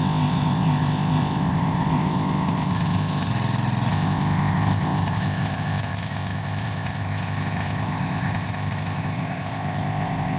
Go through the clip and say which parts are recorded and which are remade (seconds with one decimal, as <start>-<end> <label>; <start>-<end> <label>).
0.0-3.3 remade; 3.3-3.9 recorded; 3.9-10.4 remade